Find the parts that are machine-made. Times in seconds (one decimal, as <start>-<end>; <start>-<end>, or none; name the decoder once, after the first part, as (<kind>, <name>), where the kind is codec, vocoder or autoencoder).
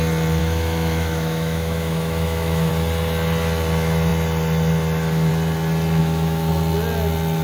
0.4-2.7 (autoencoder, DAC-VAE); 6.0-6.5